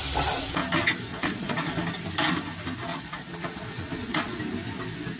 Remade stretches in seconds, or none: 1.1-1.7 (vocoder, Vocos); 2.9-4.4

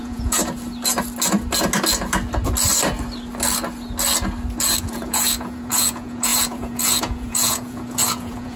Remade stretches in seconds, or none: 0.0-0.4 (vocoder, Vocos); 4.8-8.6

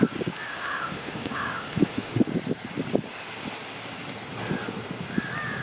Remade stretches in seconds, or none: 0.5-2.2 (autoencoder, DAC-VAE)

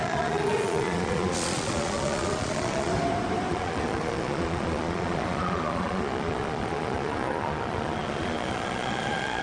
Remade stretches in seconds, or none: 0.0-2.9 (vocoder, Vocos); 3.5-9.4

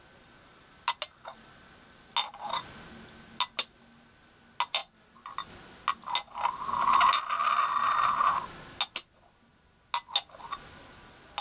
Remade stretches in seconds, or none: none

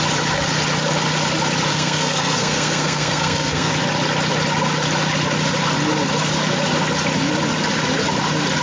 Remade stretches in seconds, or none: 1.7-3.7 (codec, SNAC)

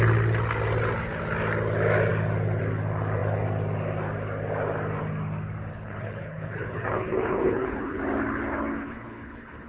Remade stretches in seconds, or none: 5.7-8.0 (codec, HILCodec); 8.7-9.7